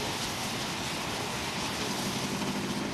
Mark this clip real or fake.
real